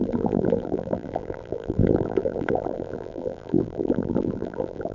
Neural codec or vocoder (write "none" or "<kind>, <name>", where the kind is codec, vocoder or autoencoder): vocoder, BigVGAN v2